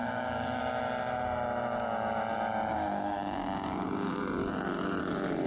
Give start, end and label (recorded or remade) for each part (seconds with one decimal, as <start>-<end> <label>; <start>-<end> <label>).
0.0-0.6 remade; 0.6-2.7 recorded; 2.7-4.2 remade; 4.2-5.5 recorded